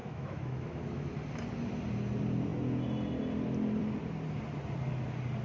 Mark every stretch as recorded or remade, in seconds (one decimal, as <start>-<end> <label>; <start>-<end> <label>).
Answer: 0.0-1.1 remade; 1.1-5.4 recorded